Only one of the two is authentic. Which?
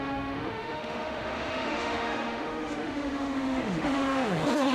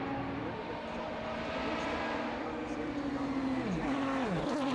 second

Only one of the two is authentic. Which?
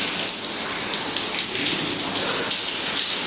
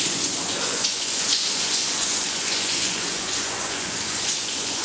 first